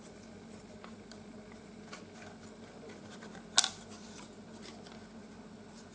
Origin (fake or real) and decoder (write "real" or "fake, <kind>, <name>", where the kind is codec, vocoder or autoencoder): real